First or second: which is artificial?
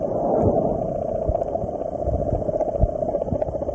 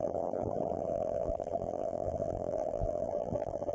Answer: second